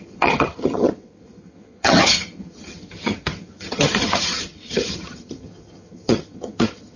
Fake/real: fake